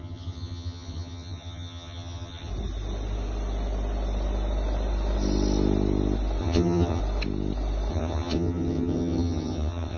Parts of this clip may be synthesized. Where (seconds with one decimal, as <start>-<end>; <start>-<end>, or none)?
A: 0.0-2.5; 6.4-7.0; 7.9-10.0